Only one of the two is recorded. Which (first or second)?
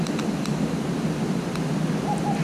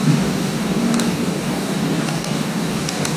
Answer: first